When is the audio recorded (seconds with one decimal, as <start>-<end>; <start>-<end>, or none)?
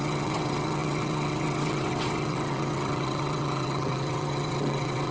none